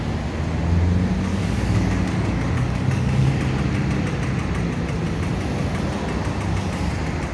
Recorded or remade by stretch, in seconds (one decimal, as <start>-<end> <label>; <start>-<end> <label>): 0.0-1.3 recorded; 1.3-3.3 remade; 3.3-7.3 recorded